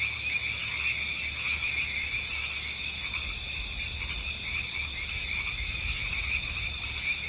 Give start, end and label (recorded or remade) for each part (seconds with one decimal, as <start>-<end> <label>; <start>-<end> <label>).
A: 0.0-0.6 remade; 0.6-1.1 recorded; 1.1-3.1 remade; 3.1-5.1 recorded; 5.1-7.3 remade